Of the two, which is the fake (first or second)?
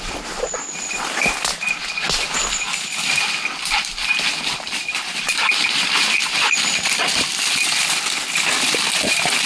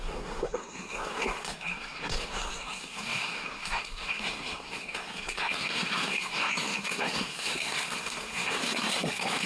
second